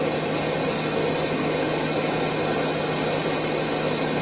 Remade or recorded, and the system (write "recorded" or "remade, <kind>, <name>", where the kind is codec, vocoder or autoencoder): recorded